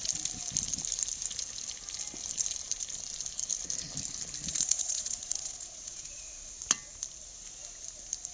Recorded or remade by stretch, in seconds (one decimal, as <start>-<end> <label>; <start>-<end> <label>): 0.0-4.5 recorded; 4.5-6.5 remade; 6.5-8.3 recorded